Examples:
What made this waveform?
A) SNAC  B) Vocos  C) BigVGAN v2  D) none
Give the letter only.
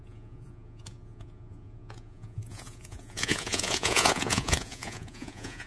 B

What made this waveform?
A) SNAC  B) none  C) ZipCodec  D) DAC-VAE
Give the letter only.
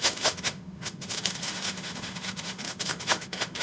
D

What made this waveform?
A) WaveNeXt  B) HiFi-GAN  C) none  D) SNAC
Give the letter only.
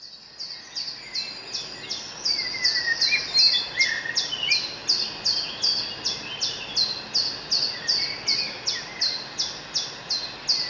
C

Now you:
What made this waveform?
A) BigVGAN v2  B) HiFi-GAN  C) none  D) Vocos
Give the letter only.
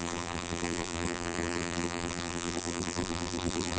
A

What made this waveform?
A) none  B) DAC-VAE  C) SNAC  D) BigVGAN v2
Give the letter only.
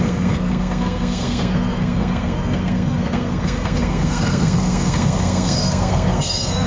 C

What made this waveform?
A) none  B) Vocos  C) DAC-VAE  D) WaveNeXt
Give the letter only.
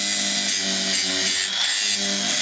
A